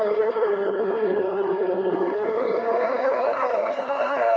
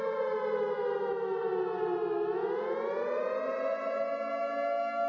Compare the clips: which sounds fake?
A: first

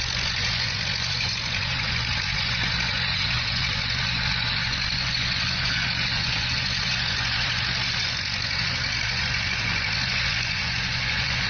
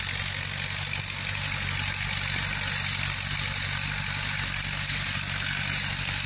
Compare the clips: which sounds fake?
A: first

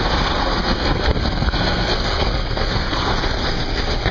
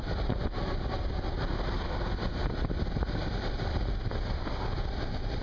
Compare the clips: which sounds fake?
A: first